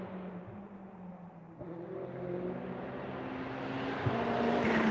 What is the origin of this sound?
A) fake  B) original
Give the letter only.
A